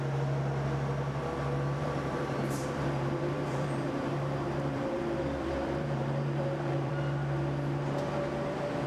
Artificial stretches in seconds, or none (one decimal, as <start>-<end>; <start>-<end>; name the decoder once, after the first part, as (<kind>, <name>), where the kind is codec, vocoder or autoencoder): 1.8-6.9 (vocoder, BigVGAN v2)